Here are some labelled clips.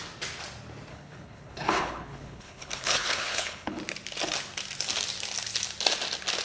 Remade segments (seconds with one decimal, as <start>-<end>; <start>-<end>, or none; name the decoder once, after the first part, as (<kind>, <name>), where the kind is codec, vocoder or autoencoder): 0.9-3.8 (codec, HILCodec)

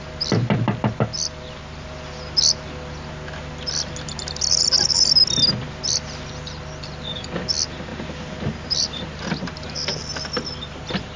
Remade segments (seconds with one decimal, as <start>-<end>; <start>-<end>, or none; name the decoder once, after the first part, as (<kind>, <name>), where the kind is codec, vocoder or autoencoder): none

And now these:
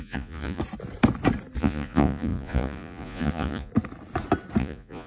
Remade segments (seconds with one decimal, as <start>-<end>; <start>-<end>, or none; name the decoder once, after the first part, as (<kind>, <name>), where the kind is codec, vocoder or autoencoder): 0.0-0.6 (vocoder, Vocos); 1.6-3.7; 4.6-5.1

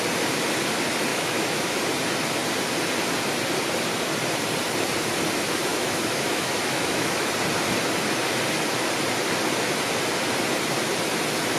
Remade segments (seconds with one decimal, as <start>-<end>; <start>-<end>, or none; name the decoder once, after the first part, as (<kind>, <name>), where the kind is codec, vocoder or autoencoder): 1.1-1.8 (autoencoder, DAC-VAE); 5.7-7.3

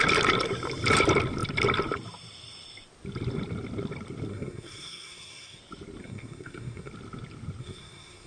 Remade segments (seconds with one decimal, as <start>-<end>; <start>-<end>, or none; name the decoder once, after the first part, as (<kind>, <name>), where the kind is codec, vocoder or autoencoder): 4.3-5.6 (codec, SNAC); 6.0-6.9; 7.6-8.3

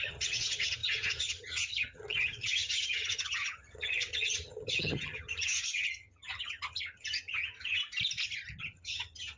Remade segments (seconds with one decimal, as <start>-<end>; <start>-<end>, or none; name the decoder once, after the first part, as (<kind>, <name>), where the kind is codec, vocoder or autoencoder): 0.0-7.8 (vocoder, HiFi-GAN); 8.6-9.4